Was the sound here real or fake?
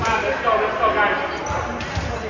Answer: real